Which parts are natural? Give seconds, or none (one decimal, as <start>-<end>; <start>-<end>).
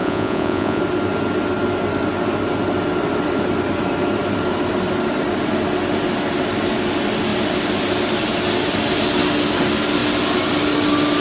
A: 0.8-11.2